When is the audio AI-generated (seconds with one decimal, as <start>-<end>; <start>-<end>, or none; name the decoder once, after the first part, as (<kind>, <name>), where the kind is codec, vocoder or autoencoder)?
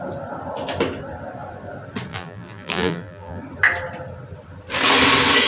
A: 2.1-3.4 (vocoder, BigVGAN v2)